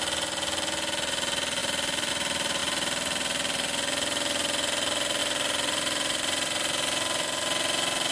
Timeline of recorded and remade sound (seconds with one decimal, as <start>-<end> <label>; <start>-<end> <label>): 0.0-1.6 recorded; 1.6-2.1 remade; 2.1-2.6 recorded; 2.6-5.2 remade; 5.2-8.1 recorded